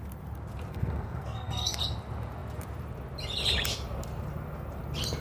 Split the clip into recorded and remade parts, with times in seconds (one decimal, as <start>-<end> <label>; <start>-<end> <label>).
0.0-0.7 recorded; 0.7-1.8 remade; 1.8-5.2 recorded